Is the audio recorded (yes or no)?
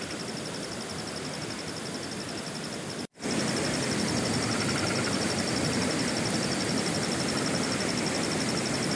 yes